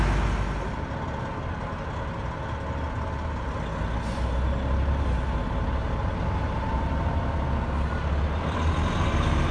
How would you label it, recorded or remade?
recorded